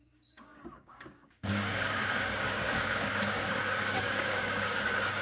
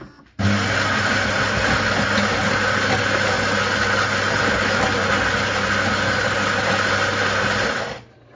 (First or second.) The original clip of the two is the second